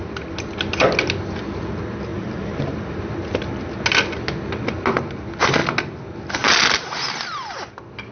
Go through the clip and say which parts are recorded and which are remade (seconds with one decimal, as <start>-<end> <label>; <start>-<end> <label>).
0.0-2.1 recorded; 2.1-3.1 remade; 3.1-8.1 recorded